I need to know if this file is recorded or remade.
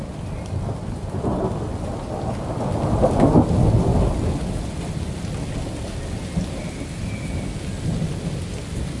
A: recorded